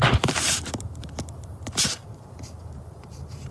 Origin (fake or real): fake